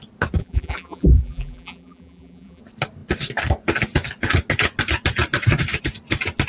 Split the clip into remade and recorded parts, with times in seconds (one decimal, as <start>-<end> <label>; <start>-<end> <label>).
0.0-0.4 recorded; 0.4-2.6 remade; 2.6-6.5 recorded